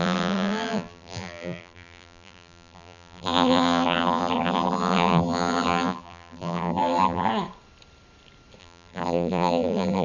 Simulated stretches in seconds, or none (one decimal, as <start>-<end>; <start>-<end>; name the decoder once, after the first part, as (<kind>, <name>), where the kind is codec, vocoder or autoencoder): 0.0-7.3 (vocoder, BigVGAN v2); 8.6-10.0